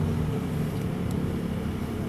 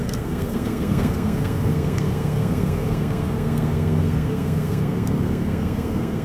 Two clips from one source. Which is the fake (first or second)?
second